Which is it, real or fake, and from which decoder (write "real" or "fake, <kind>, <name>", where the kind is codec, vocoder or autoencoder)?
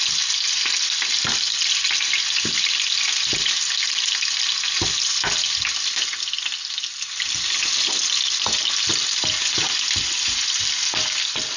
real